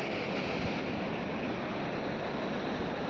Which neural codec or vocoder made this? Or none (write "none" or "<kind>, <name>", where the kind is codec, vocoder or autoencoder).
none